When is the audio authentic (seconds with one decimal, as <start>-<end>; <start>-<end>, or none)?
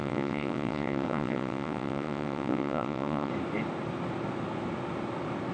3.3-5.5